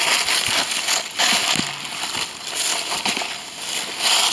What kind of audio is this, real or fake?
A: real